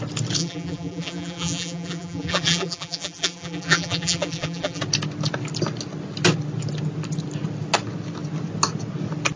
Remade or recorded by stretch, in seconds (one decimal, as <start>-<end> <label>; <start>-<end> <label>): 0.0-0.4 recorded; 0.4-4.8 remade; 4.8-9.4 recorded